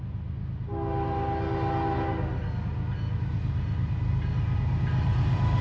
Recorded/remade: recorded